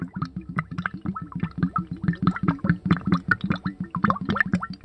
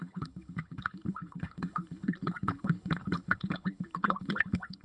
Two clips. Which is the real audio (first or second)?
first